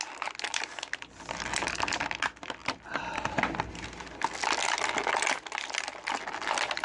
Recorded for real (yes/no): yes